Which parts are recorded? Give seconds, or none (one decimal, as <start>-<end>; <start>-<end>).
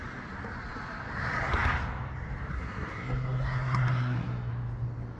0.0-2.5; 4.5-5.2